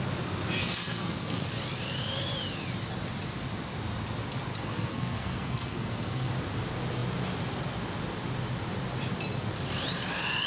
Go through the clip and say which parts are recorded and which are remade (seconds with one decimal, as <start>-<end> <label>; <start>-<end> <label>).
0.0-0.6 recorded; 0.6-1.5 remade; 1.5-4.5 recorded; 4.5-6.3 remade; 6.3-10.5 recorded